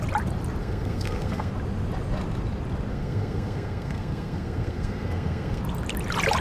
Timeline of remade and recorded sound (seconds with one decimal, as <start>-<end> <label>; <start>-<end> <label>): 0.0-0.6 recorded; 0.6-1.5 remade; 1.5-2.9 recorded; 2.9-5.6 remade; 5.6-6.4 recorded

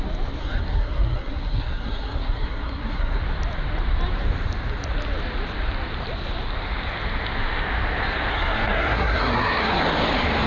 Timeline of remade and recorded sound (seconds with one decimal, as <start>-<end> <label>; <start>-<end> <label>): 0.0-0.4 recorded; 0.4-3.2 remade; 3.2-8.3 recorded; 8.3-9.8 remade; 9.8-10.5 recorded

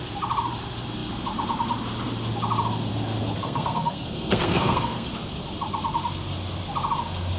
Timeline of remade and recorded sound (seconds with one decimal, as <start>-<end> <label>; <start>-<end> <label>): 0.0-3.4 recorded; 3.4-5.1 remade; 5.1-7.4 recorded

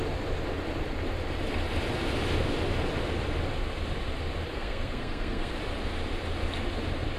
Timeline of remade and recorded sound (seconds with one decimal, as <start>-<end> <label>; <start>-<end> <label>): 0.0-4.5 recorded; 4.5-5.5 remade; 5.5-7.2 recorded

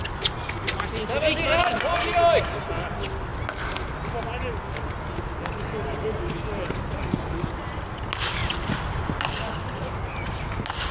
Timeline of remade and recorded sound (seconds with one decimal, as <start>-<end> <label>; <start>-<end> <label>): 0.0-10.9 recorded

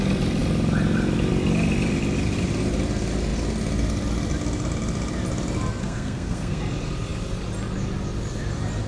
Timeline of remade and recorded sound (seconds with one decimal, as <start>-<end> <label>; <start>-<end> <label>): 0.0-5.8 recorded; 5.8-6.6 remade; 6.6-8.9 recorded

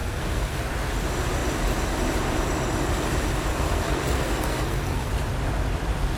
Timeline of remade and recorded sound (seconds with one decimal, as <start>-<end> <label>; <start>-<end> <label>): 0.0-0.6 remade; 0.6-3.5 recorded; 3.5-5.1 remade; 5.1-6.2 recorded